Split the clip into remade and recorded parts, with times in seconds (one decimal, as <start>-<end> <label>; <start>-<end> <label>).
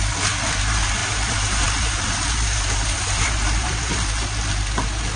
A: 0.0-1.0 recorded; 1.0-4.1 remade; 4.1-5.2 recorded